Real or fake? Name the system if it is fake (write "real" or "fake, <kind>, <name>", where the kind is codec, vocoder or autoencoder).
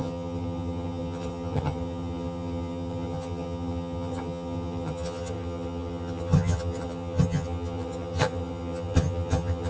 fake, vocoder, HiFi-GAN